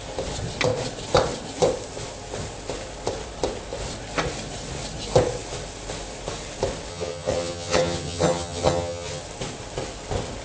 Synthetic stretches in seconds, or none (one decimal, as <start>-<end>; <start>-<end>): 6.9-9.2